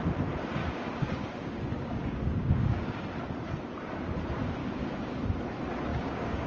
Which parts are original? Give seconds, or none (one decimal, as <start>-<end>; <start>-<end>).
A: 0.0-0.6; 3.0-4.6; 5.3-5.9